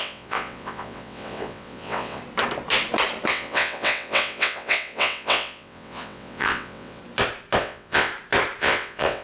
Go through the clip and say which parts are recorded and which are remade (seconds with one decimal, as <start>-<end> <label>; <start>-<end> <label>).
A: 0.0-2.2 remade; 2.2-3.3 recorded; 3.3-7.0 remade; 7.0-7.6 recorded; 7.6-8.1 remade; 8.1-8.6 recorded; 8.6-9.2 remade